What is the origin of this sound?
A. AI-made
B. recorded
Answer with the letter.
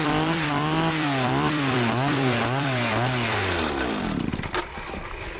A